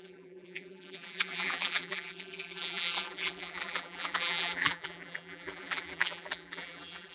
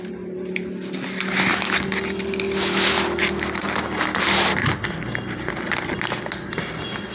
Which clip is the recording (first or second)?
second